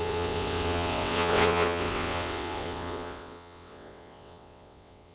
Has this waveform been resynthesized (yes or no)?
yes